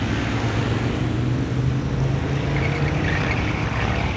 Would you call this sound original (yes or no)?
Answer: yes